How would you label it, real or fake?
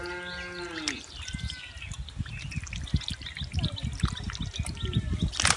real